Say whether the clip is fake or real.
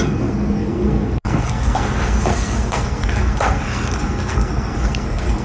fake